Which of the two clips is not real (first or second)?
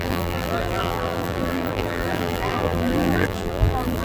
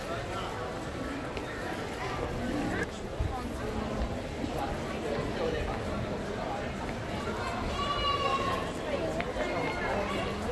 first